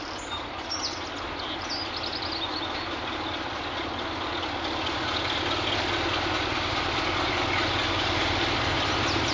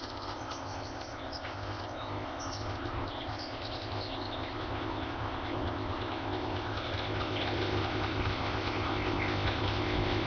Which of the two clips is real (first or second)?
first